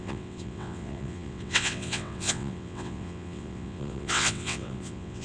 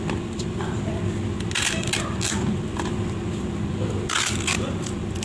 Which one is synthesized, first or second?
first